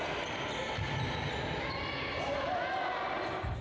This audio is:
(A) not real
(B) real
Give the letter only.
B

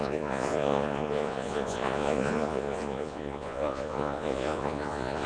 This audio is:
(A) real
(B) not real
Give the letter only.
B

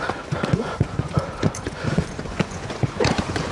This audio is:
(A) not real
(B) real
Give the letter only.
A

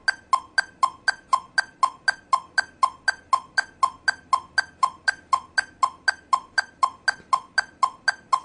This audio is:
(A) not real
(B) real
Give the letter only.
B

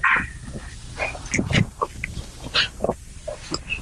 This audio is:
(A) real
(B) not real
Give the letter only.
A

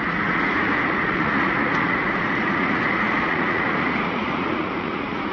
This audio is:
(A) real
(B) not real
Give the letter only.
B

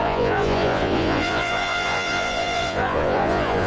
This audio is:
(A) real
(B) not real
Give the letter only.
B